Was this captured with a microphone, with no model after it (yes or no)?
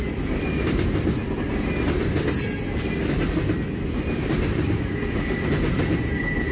yes